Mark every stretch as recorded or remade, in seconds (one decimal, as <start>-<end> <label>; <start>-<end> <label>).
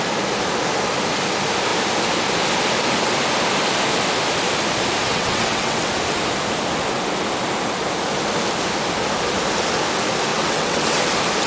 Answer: 0.0-5.1 recorded; 5.1-5.9 remade; 5.9-10.3 recorded; 10.3-11.0 remade; 11.0-11.5 recorded